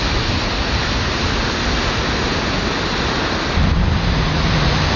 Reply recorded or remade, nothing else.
recorded